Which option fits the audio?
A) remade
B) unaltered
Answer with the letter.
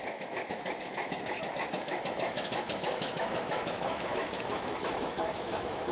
A